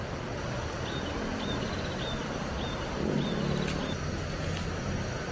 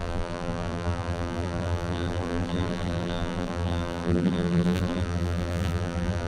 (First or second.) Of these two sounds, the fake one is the second